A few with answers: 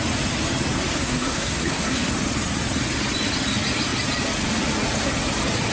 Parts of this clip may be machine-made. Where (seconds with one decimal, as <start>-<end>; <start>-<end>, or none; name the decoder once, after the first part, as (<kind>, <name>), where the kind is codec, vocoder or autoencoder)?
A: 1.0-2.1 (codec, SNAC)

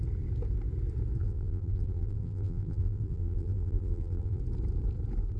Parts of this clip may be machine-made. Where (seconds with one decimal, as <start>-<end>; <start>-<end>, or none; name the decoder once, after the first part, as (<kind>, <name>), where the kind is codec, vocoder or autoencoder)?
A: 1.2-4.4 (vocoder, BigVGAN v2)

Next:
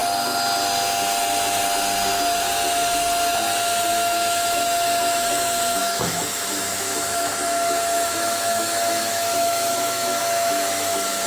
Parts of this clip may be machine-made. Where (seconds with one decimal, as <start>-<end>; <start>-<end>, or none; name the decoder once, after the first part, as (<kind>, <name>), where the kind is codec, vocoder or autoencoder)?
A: 3.9-11.3 (autoencoder, DAC-VAE)

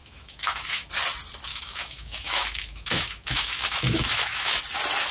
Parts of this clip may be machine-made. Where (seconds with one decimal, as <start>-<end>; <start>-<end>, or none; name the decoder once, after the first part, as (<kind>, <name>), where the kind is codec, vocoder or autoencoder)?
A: 0.0-0.9 (autoencoder, DAC-VAE); 1.5-4.6

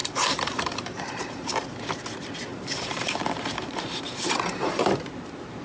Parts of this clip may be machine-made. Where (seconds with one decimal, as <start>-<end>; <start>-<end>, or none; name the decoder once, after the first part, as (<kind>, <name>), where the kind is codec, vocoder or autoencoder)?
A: 0.0-1.7 (vocoder, BigVGAN v2); 2.5-4.9

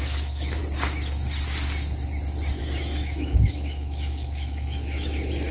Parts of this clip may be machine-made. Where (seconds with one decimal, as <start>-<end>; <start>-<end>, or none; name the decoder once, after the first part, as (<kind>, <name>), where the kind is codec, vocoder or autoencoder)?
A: 0.0-0.6 (autoencoder, DAC-VAE); 2.6-5.5